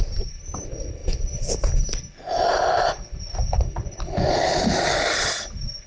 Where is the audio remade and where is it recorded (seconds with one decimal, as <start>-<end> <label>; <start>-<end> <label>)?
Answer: 0.0-5.9 recorded